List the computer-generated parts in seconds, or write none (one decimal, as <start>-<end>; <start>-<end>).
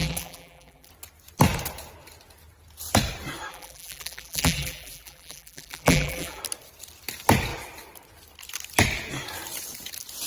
0.0-0.9; 3.5-6.4